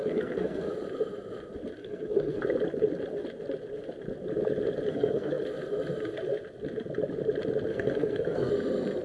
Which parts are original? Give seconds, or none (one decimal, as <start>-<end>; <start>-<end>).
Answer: 0.7-1.8; 2.4-4.9; 5.4-7.7; 8.5-9.0